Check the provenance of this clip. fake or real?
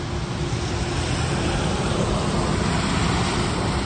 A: real